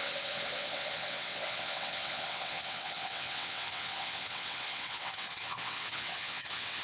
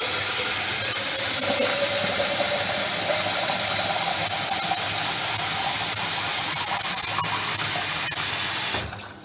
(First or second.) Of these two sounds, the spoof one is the first